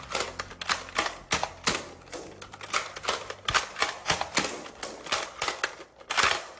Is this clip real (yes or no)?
yes